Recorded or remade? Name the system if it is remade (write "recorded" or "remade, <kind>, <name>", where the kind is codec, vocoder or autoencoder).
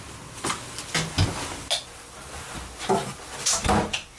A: recorded